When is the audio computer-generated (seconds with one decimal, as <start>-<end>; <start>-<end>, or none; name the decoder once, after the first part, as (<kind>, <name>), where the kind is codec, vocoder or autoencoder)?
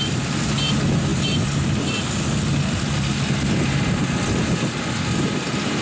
none